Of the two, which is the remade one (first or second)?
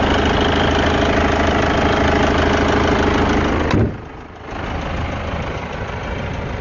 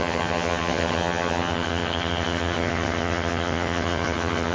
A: second